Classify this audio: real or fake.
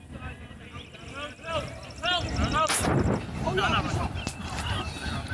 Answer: real